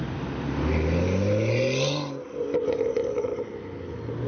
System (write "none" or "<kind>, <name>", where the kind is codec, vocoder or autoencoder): none